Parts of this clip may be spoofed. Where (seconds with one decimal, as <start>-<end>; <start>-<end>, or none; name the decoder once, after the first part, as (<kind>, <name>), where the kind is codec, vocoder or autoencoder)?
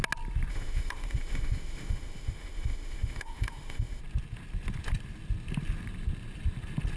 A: 0.5-4.0 (autoencoder, DAC-VAE)